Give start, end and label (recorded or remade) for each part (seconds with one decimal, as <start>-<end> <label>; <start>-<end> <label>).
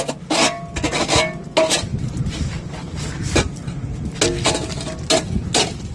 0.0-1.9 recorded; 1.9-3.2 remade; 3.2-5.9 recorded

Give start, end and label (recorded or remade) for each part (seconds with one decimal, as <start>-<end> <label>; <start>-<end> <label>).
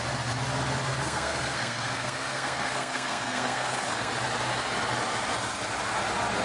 0.0-0.9 recorded; 0.9-4.1 remade; 4.1-6.4 recorded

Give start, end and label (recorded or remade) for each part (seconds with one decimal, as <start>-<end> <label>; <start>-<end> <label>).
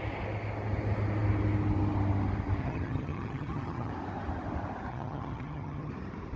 0.0-2.6 recorded; 2.6-3.9 remade; 3.9-4.9 recorded; 4.9-5.9 remade; 5.9-6.4 recorded